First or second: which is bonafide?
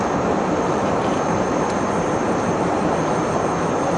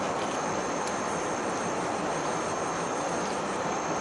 second